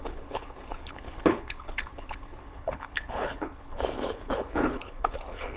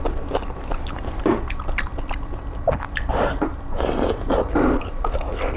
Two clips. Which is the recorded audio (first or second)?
second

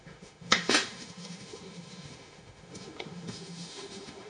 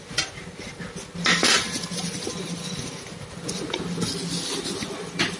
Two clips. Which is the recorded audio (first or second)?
second